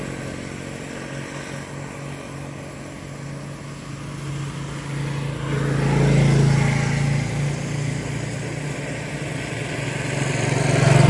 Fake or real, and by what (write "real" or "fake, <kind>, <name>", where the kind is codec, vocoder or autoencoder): real